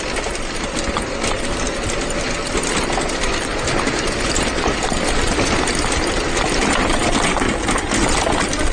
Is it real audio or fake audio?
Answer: real